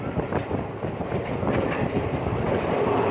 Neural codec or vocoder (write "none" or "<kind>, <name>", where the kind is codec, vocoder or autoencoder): vocoder, BigVGAN v2